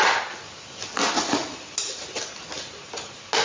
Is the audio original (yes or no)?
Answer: yes